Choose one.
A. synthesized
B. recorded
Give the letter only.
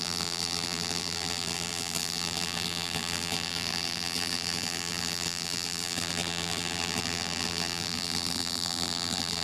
A